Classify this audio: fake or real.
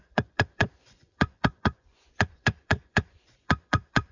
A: fake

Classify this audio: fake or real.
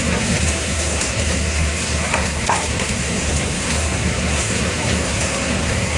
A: fake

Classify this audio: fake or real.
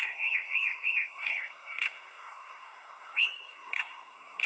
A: fake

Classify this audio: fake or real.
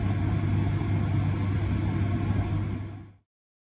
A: real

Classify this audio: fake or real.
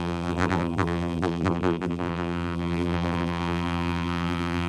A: fake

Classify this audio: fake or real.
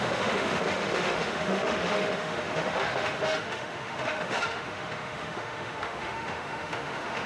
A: fake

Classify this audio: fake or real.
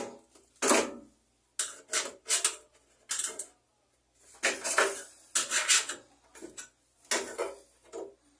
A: real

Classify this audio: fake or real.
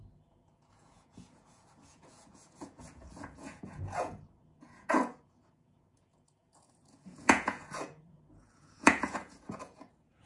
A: fake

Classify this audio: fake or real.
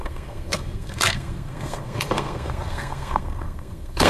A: fake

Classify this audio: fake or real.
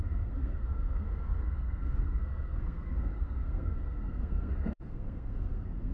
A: fake